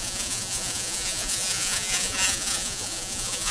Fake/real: fake